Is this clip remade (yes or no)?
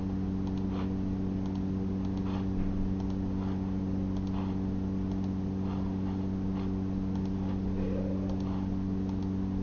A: no